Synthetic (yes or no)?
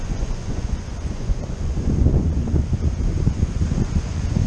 yes